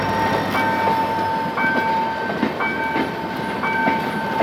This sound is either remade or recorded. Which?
recorded